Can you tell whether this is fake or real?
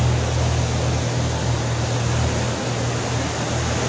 real